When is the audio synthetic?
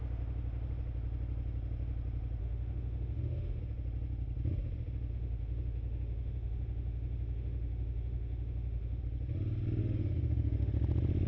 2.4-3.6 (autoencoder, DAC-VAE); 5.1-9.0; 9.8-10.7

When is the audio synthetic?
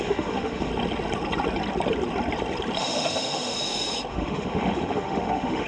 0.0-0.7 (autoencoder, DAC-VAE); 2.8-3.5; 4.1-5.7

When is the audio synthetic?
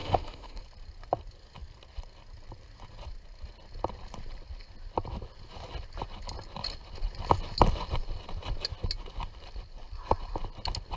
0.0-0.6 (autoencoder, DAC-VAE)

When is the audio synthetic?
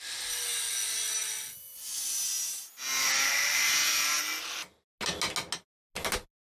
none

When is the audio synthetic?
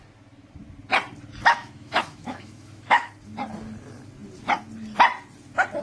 1.4-3.1 (autoencoder, DAC-VAE)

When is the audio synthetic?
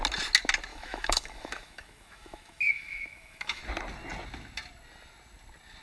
0.7-3.6 (autoencoder, DAC-VAE)